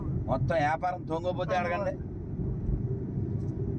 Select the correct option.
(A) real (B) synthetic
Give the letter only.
A